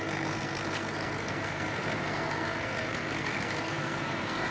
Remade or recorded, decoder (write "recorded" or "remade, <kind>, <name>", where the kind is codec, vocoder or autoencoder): remade, codec, SNAC